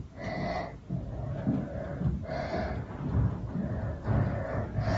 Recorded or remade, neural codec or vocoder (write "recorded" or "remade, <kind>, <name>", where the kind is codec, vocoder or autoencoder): recorded